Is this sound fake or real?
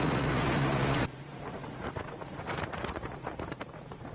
fake